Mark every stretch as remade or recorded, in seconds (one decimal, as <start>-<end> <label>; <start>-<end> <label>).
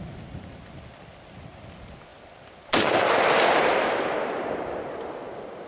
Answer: 0.0-5.7 recorded